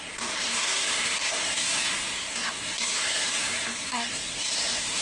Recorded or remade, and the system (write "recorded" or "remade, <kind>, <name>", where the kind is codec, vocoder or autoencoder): remade, codec, SNAC